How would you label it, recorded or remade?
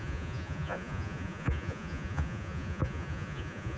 remade